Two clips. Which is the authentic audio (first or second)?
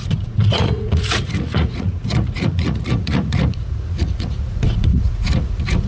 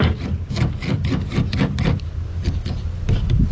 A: second